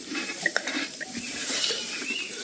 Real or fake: fake